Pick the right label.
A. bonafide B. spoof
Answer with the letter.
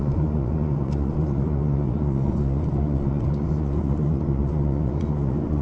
B